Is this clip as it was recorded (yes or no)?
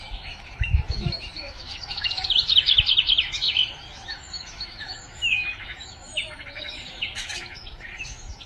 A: no